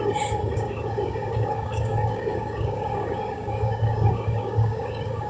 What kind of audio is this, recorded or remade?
remade